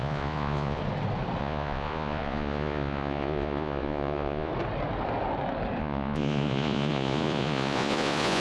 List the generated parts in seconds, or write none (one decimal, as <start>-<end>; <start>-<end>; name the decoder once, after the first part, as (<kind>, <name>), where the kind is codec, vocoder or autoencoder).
0.0-0.8 (vocoder, Vocos); 1.4-4.5; 5.8-8.4